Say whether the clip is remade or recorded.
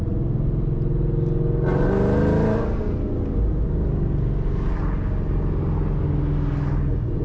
recorded